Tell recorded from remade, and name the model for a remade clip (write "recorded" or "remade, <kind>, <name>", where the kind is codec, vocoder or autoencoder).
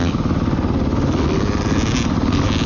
recorded